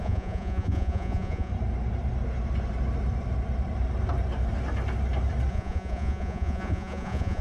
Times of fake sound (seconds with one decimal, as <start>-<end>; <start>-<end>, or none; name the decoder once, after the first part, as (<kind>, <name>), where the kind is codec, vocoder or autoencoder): 0.0-1.5 (vocoder, Vocos); 5.5-7.4